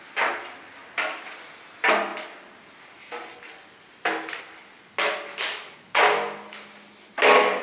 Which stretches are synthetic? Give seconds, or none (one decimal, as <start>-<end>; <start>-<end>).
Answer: none